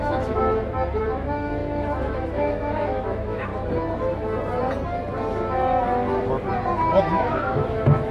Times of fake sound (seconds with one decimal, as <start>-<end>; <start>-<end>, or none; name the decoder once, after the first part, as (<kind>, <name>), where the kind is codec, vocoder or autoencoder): 0.0-0.4 (autoencoder, DAC-VAE); 1.0-3.5; 7.0-8.1